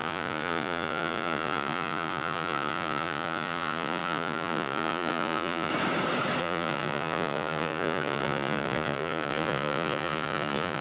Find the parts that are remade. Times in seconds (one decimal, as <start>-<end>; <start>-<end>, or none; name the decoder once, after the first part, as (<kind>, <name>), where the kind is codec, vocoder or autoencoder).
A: 0.0-5.7 (vocoder, Vocos); 6.4-10.8

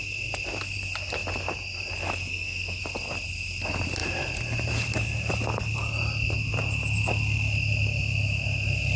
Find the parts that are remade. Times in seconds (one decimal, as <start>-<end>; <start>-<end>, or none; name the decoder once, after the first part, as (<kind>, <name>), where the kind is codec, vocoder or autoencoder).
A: 2.3-2.8 (codec, SNAC)

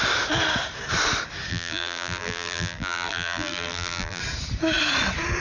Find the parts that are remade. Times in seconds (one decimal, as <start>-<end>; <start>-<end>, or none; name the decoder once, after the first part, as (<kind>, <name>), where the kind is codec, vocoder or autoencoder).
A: 1.5-4.2 (vocoder, BigVGAN v2)